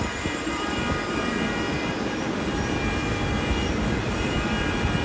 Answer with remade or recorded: remade